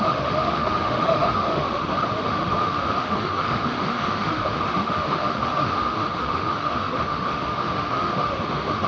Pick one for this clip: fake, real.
fake